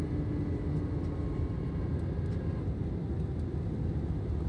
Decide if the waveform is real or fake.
real